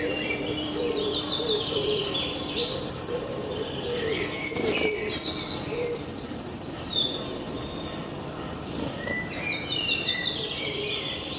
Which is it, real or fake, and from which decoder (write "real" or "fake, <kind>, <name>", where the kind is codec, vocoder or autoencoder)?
fake, vocoder, BigVGAN v2